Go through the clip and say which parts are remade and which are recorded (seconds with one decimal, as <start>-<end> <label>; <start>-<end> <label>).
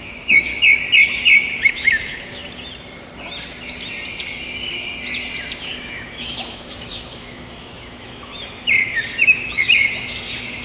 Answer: 0.0-0.5 remade; 0.5-1.7 recorded; 1.7-2.4 remade; 2.4-5.8 recorded; 5.8-10.6 remade